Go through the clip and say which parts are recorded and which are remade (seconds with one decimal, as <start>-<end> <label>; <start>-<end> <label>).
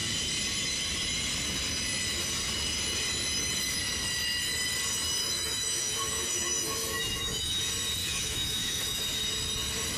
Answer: 0.0-5.2 recorded; 5.2-7.6 remade; 7.6-8.0 recorded; 8.0-9.0 remade; 9.0-10.0 recorded